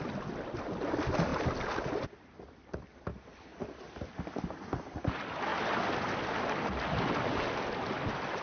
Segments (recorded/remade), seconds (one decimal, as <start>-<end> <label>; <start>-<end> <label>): 0.0-8.4 recorded